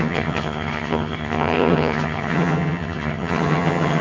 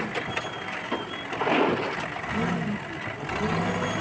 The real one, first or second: second